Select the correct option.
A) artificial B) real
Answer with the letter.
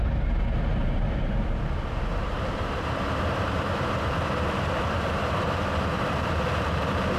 A